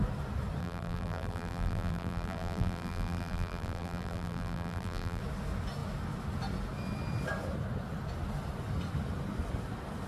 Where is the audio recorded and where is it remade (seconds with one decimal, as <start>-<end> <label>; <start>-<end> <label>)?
0.0-0.6 recorded; 0.6-5.2 remade; 5.2-10.1 recorded